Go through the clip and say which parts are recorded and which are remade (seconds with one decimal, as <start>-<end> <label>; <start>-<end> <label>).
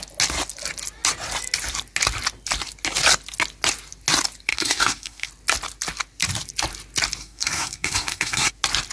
0.0-4.5 recorded; 4.5-5.3 remade; 5.3-7.2 recorded; 7.2-8.5 remade; 8.5-8.9 recorded